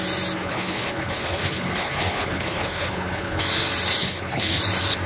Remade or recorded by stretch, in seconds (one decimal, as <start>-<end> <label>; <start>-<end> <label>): 0.0-0.4 recorded; 0.4-3.4 remade; 3.4-4.0 recorded; 4.0-4.6 remade; 4.6-5.1 recorded